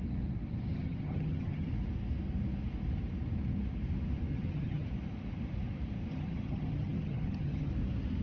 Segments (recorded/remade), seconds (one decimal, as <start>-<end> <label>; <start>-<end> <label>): 0.0-0.7 recorded; 0.7-1.7 remade; 1.7-4.3 recorded; 4.3-4.9 remade; 4.9-6.1 recorded; 6.1-7.7 remade; 7.7-8.2 recorded